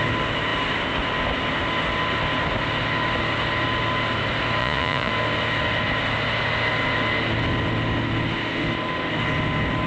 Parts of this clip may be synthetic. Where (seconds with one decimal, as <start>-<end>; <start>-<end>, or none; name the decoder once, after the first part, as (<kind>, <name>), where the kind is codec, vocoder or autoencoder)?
4.6-5.1 (vocoder, Vocos)